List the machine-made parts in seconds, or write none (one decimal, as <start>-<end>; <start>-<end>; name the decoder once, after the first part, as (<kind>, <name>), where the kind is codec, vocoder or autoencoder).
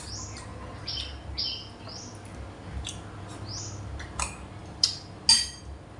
none